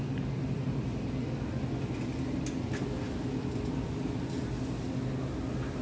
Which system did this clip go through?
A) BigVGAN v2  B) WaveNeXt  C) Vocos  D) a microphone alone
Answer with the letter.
D